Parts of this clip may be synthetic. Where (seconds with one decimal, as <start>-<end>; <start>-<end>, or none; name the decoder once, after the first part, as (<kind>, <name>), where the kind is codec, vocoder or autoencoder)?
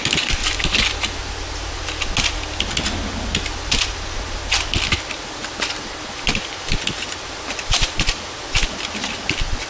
0.0-0.4 (vocoder, BigVGAN v2); 5.0-9.7